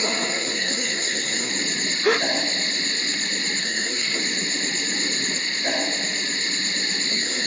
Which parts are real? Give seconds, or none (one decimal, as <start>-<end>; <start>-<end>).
1.5-3.6; 4.2-7.1